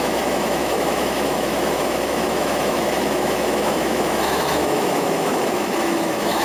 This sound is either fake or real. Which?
fake